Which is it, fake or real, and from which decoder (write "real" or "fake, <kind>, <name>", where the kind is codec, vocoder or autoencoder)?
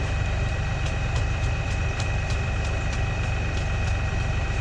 fake, vocoder, BigVGAN v2